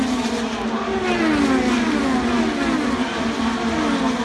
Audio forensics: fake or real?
real